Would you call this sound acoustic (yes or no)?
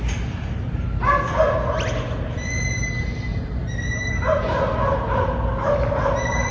yes